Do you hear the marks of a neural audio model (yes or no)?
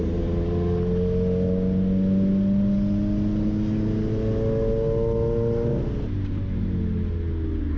no